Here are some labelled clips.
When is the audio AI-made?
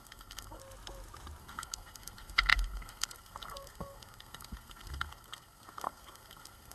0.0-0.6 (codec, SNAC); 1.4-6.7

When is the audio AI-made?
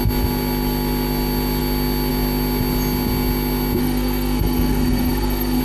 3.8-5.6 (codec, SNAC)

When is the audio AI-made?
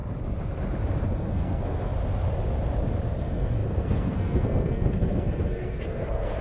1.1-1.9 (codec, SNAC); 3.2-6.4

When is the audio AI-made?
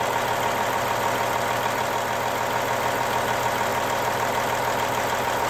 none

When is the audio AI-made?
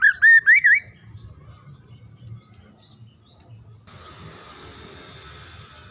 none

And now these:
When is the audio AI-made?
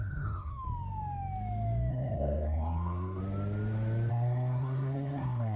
0.0-0.5 (codec, SNAC); 1.9-3.2; 4.1-5.6